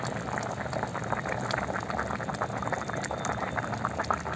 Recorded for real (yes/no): yes